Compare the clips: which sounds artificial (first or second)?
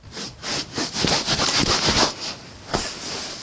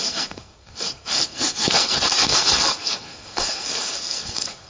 second